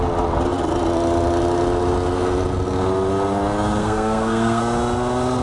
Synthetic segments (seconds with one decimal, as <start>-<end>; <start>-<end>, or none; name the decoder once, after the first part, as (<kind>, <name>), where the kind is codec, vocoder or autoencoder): 3.8-4.6 (codec, SNAC)